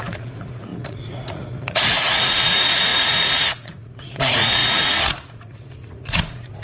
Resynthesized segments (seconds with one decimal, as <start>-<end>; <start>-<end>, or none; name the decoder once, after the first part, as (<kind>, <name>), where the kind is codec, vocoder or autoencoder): 0.0-6.6 (vocoder, Vocos)